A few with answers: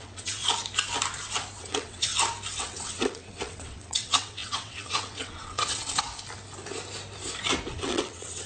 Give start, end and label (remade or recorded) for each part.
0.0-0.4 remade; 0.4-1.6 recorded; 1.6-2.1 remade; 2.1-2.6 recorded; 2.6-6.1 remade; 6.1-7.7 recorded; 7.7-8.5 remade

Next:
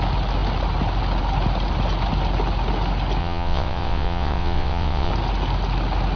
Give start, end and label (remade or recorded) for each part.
0.0-3.2 recorded; 3.2-5.1 remade; 5.1-6.2 recorded

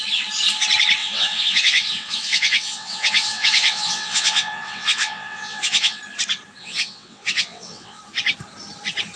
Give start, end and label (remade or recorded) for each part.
0.0-1.0 recorded; 1.0-6.0 remade; 6.0-6.6 recorded; 6.6-8.0 remade; 8.0-9.2 recorded

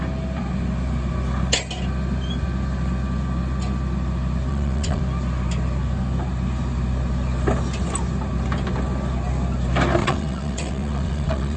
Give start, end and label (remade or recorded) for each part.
0.0-4.5 recorded; 4.5-5.0 remade; 5.0-10.0 recorded; 10.0-11.6 remade